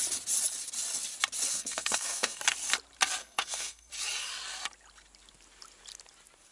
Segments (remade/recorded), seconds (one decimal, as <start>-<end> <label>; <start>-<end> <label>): 0.0-1.5 recorded; 1.5-2.4 remade; 2.4-3.2 recorded; 3.2-3.9 remade; 3.9-6.5 recorded